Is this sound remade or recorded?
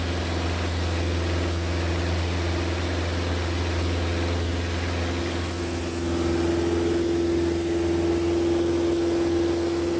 recorded